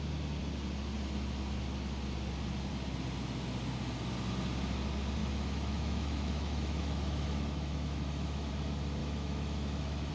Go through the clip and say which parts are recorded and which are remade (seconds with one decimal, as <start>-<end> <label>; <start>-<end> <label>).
0.0-5.2 recorded; 5.2-8.5 remade; 8.5-9.0 recorded; 9.0-10.1 remade